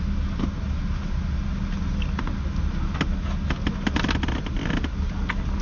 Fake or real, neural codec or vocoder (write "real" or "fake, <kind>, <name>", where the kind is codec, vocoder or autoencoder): real